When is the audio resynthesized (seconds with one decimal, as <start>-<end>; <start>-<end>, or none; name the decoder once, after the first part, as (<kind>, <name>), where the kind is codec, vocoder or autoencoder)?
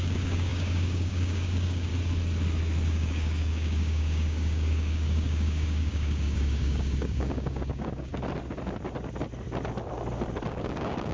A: 0.0-1.9 (codec, DAC); 2.9-8.1; 10.5-11.1